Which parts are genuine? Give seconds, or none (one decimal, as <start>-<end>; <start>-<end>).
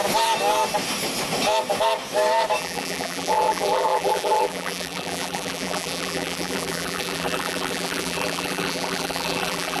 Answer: 0.0-2.6